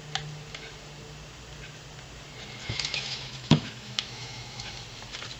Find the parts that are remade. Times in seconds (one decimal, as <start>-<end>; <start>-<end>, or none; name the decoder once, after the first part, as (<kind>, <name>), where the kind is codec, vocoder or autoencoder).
2.6-4.7 (autoencoder, DAC-VAE)